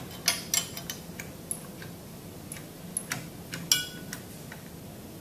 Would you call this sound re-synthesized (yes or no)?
no